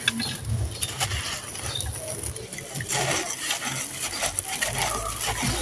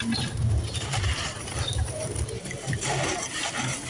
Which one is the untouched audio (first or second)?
first